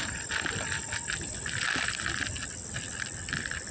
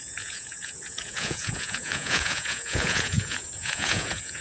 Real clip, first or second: first